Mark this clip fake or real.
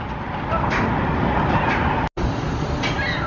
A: real